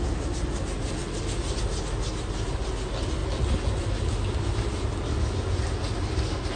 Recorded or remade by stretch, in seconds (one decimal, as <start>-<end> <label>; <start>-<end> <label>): 0.0-2.1 recorded; 2.1-2.6 remade; 2.6-6.6 recorded